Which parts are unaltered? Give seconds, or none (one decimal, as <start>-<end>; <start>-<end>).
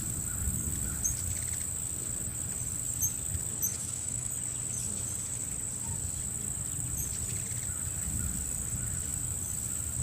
0.0-3.7; 4.3-10.0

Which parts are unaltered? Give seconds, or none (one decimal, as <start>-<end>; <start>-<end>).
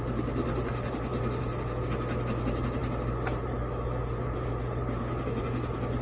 0.0-6.0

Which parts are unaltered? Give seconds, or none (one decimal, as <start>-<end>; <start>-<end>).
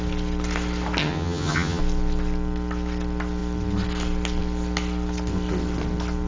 0.0-1.0; 1.8-6.3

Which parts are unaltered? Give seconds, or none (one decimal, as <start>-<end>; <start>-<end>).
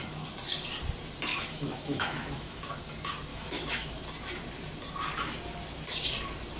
0.0-1.3; 2.7-3.3; 3.9-6.6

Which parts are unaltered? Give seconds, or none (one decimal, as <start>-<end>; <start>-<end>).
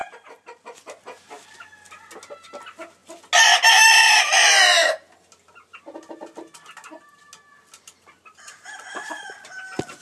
0.0-10.0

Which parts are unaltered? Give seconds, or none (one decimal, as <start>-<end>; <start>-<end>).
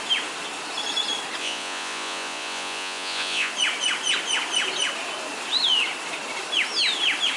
0.0-1.4; 3.5-7.4